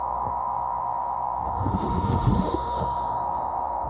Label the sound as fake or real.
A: fake